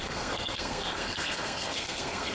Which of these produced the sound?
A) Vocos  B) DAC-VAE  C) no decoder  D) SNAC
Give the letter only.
D